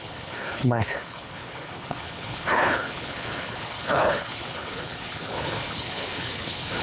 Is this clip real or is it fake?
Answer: fake